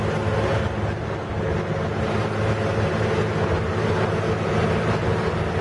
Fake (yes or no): no